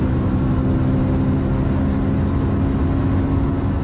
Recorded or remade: recorded